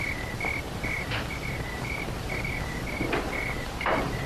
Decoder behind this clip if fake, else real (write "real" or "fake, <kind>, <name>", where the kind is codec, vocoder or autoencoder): fake, vocoder, BigVGAN v2